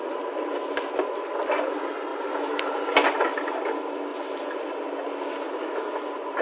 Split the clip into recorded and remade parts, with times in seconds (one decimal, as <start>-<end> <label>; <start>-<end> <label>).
0.0-2.1 recorded; 2.1-3.6 remade; 3.6-6.4 recorded